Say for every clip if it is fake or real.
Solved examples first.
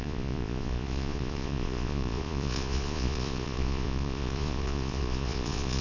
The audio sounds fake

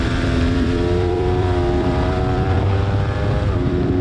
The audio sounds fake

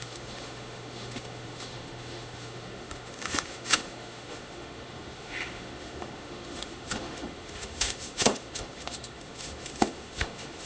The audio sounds fake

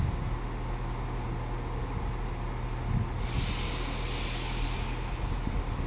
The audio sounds real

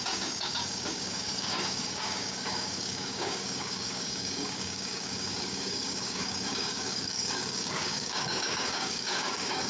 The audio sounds fake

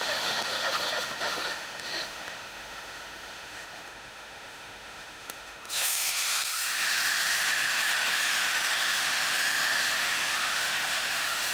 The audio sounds fake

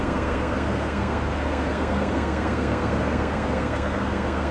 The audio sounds fake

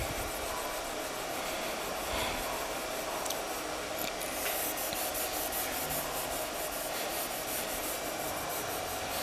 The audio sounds real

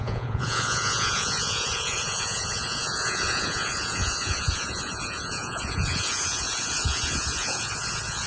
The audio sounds fake